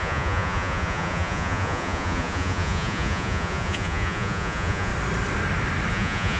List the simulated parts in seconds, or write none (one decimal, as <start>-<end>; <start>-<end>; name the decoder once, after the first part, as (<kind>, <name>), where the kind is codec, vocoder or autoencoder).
0.0-4.9 (vocoder, Vocos); 5.9-6.4